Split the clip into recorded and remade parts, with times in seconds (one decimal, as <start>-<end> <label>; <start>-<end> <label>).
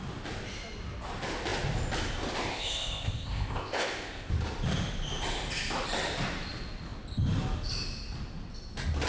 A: 0.0-2.5 recorded; 2.5-4.3 remade; 4.3-9.1 recorded